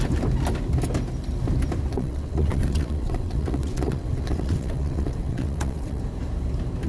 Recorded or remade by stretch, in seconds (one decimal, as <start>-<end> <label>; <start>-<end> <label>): 0.0-1.9 recorded; 1.9-6.0 remade; 6.0-6.9 recorded